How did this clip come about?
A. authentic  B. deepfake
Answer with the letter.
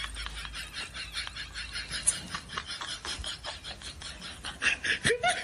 A